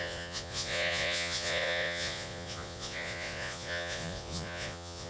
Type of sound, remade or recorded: remade